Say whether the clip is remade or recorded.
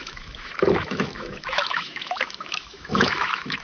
remade